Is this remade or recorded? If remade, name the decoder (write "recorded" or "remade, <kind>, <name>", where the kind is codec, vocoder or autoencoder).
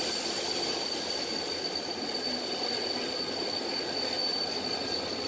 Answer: recorded